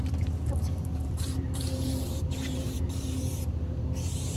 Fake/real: fake